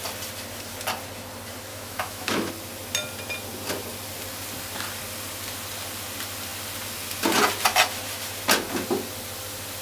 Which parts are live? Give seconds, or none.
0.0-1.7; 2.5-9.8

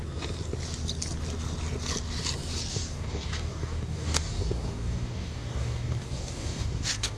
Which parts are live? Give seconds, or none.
0.0-2.7